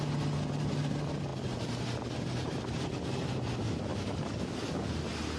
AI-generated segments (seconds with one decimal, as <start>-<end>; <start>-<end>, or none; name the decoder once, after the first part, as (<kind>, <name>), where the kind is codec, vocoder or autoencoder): 3.9-4.9 (codec, DAC)

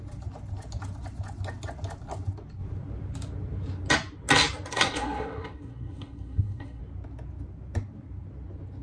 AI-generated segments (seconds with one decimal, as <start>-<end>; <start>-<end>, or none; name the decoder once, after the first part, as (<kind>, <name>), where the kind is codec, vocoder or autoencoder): 4.7-6.8 (codec, SNAC)

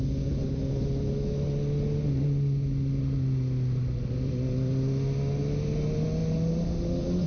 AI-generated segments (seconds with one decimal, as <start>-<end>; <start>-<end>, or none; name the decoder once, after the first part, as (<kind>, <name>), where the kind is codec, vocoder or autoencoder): none

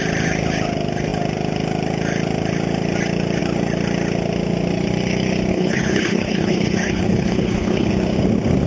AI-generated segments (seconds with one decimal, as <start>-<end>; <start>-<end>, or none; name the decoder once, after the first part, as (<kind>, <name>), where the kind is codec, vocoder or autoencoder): 5.5-7.9 (codec, HILCodec)

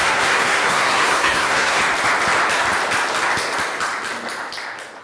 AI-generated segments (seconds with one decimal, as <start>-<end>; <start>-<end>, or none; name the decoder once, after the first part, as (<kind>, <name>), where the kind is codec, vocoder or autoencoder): 0.0-1.8 (codec, SNAC)

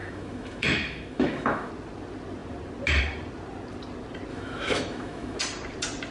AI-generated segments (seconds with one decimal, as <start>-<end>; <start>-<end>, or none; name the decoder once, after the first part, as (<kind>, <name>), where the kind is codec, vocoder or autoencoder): 0.0-1.7 (autoencoder, DAC-VAE); 4.3-5.4

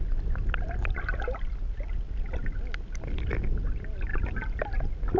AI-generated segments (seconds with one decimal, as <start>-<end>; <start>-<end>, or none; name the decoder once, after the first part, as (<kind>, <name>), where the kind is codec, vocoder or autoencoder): none